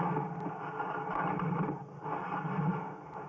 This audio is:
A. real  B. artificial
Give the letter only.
A